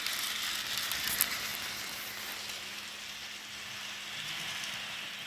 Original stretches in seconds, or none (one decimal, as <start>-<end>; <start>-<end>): 0.0-5.3